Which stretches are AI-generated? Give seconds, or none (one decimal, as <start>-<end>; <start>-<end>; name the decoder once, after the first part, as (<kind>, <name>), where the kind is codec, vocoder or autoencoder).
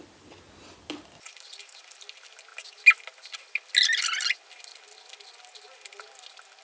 none